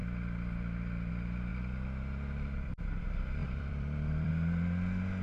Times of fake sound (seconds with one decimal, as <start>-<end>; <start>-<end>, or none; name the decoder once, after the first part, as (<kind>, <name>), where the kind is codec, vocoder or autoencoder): 3.4-4.3 (vocoder, BigVGAN v2)